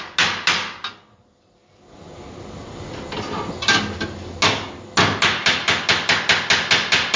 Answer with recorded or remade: recorded